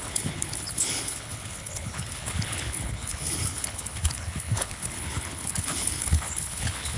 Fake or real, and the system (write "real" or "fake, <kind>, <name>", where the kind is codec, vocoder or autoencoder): fake, codec, HILCodec